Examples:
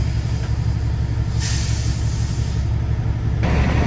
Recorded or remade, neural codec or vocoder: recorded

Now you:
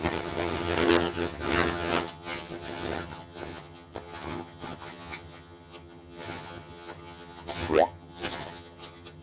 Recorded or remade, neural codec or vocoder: remade, vocoder, HiFi-GAN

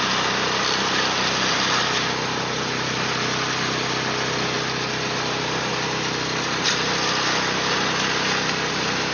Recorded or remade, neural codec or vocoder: recorded